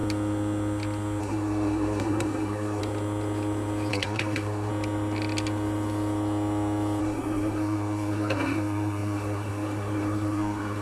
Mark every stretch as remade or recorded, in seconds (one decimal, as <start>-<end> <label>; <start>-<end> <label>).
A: 0.0-1.2 recorded; 1.2-2.8 remade; 2.8-3.9 recorded; 3.9-4.7 remade; 4.7-7.0 recorded; 7.0-10.8 remade